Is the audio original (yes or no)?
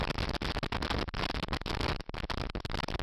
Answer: yes